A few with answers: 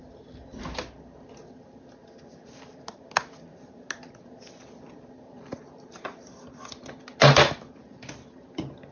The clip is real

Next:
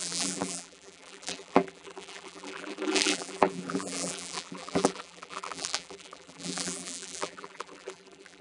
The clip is fake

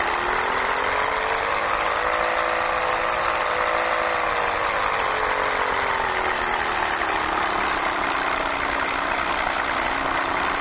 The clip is real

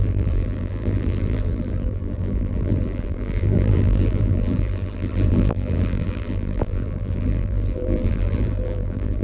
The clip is fake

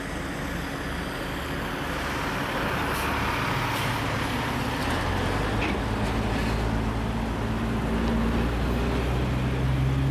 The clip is real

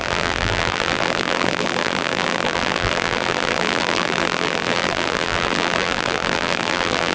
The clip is fake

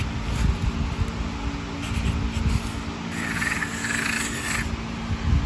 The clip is real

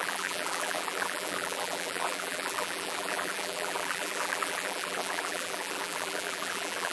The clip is fake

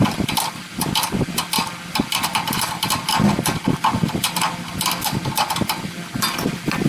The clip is real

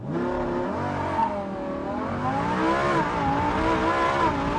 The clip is real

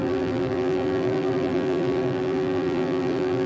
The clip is fake